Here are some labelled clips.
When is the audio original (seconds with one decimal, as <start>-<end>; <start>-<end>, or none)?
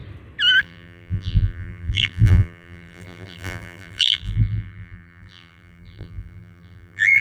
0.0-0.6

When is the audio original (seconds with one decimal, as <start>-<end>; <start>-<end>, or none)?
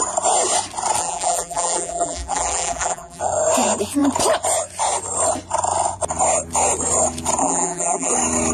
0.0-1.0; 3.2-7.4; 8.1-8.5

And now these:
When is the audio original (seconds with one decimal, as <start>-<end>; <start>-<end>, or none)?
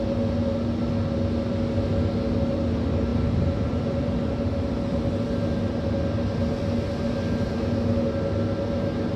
0.0-9.2